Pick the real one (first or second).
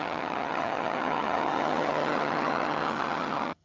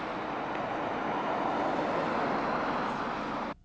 second